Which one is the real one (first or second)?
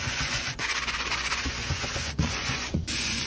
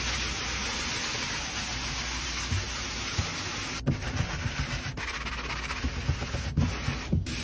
second